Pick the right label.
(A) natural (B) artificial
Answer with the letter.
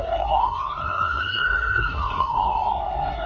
B